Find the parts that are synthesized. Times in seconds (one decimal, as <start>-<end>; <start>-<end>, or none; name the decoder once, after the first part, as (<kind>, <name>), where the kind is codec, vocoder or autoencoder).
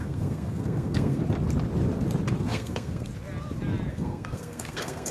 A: 0.0-1.2 (codec, SNAC); 2.4-3.1; 3.9-5.1